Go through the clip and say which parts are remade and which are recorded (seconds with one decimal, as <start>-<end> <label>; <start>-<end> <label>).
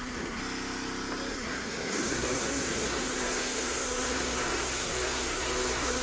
0.0-0.4 remade; 0.4-1.3 recorded; 1.3-6.0 remade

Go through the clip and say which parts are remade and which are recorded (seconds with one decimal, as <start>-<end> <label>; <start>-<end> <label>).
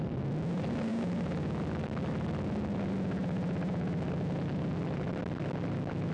0.0-6.1 recorded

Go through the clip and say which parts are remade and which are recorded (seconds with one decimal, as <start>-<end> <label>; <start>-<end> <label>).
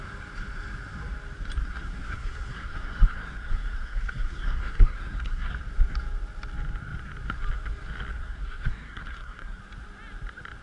0.0-1.6 recorded; 1.6-5.5 remade; 5.5-8.1 recorded; 8.1-9.6 remade; 9.6-10.6 recorded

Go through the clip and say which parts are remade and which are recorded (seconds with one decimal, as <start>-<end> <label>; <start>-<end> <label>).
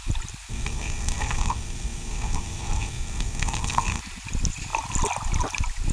0.0-0.5 recorded; 0.5-4.0 remade; 4.0-5.9 recorded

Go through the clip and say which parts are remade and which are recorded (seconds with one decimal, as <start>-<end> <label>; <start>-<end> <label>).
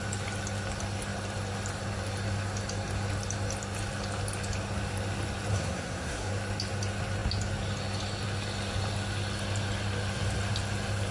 0.0-5.5 recorded; 5.5-6.3 remade; 6.3-11.1 recorded